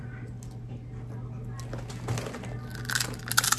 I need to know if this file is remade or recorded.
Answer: recorded